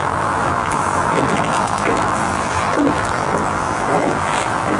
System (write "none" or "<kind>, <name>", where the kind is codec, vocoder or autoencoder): vocoder, BigVGAN v2